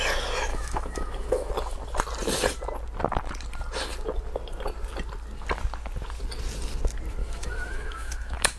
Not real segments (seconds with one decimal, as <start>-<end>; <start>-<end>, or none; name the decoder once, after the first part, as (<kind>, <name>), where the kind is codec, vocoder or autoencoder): 0.5-1.5 (autoencoder, DAC-VAE); 7.2-8.6